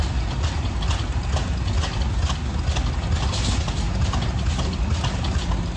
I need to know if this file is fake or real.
real